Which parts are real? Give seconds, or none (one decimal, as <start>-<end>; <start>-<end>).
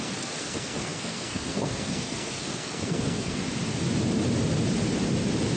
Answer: 3.4-5.6